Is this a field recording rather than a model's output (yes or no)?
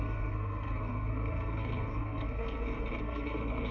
no